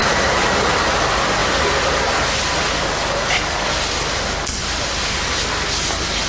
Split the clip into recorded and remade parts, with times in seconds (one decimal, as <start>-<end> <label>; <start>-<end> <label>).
0.0-0.7 remade; 0.7-4.6 recorded; 4.6-5.5 remade; 5.5-6.3 recorded